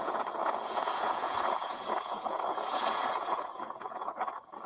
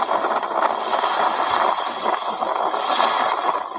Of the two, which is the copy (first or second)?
first